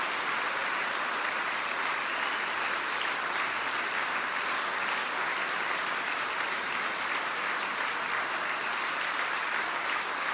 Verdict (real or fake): real